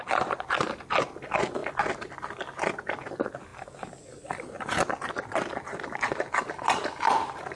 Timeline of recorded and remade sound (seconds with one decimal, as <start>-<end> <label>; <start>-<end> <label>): 0.0-7.6 recorded